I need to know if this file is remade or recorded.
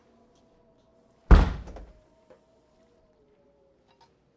recorded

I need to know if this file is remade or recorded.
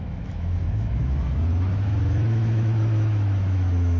remade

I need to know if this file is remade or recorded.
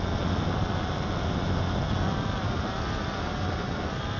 recorded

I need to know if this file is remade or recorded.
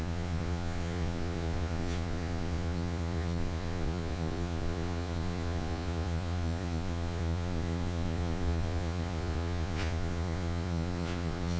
remade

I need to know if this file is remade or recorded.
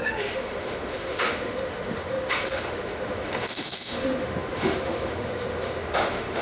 remade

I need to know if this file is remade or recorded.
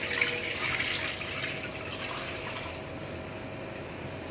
recorded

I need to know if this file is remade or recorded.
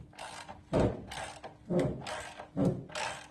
recorded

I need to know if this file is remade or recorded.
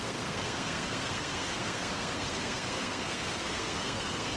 remade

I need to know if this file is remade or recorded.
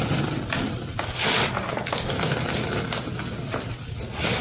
recorded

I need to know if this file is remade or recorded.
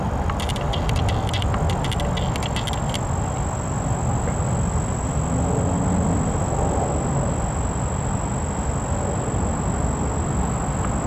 recorded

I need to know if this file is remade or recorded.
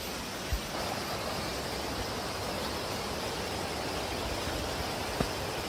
recorded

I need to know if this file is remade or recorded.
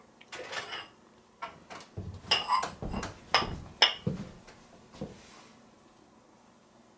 recorded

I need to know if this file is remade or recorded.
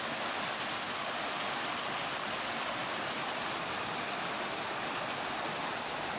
recorded